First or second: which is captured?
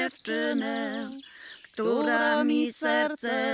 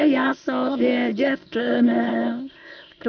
first